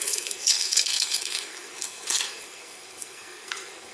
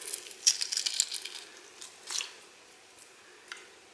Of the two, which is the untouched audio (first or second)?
second